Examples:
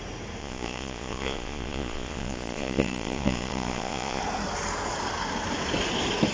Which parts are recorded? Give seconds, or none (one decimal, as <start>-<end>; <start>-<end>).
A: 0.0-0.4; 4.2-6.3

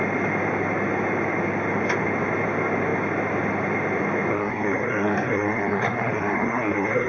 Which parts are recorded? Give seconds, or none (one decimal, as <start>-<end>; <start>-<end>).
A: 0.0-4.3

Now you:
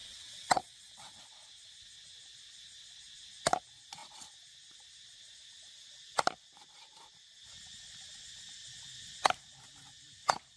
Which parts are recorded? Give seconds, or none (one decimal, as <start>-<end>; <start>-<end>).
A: 1.2-10.6